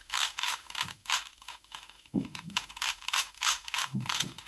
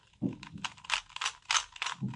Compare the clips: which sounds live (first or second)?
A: second